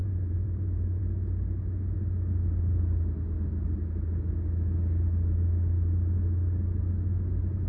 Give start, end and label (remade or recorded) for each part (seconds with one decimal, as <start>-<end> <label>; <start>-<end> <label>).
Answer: 0.0-1.0 remade; 1.0-7.7 recorded